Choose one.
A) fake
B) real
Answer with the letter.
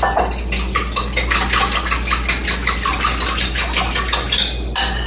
B